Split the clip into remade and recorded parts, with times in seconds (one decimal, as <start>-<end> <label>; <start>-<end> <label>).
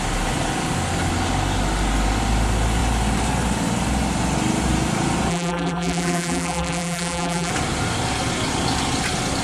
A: 0.0-5.3 recorded; 5.3-7.5 remade; 7.5-9.4 recorded